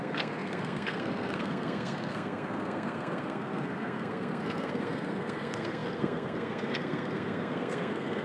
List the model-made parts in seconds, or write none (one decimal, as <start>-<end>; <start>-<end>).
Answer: 0.0-8.2